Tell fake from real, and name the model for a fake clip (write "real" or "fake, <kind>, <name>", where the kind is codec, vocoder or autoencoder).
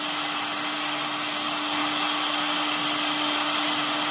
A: real